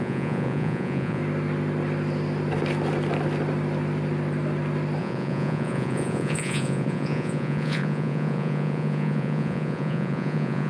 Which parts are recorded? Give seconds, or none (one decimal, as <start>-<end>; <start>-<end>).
1.2-5.0